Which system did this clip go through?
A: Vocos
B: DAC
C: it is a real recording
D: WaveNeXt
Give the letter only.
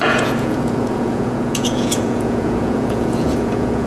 A